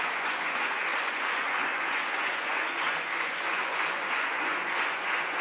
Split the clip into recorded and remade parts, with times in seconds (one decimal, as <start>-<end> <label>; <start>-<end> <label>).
0.0-5.4 remade